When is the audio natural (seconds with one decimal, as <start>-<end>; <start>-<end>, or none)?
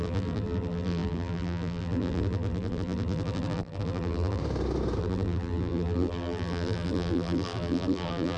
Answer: 4.4-5.0